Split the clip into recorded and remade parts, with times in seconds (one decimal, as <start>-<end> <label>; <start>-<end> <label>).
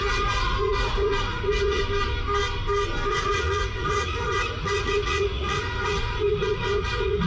0.0-1.8 remade; 1.8-3.1 recorded; 3.1-7.3 remade